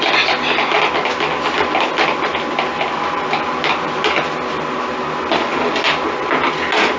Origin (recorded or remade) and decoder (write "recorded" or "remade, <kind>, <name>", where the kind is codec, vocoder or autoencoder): recorded